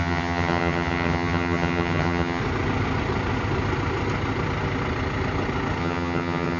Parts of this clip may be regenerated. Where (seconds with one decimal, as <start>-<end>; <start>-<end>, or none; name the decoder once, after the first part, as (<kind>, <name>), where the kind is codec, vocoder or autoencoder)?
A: 0.0-2.4 (vocoder, HiFi-GAN); 5.8-6.6